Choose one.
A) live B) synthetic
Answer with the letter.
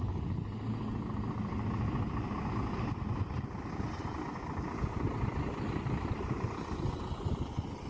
A